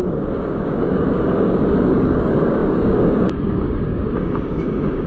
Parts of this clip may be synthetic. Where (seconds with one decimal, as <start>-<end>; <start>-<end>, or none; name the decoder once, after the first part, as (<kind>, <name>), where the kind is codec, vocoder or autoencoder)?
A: 0.0-5.1 (codec, DAC)